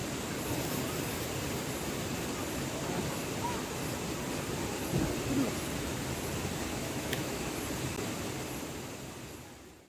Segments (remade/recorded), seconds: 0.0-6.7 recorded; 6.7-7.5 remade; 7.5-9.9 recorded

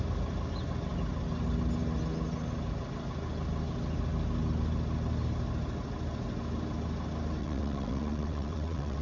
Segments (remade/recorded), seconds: 0.0-7.4 recorded; 7.4-9.0 remade

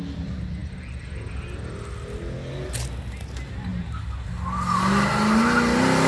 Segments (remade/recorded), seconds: 0.0-6.1 recorded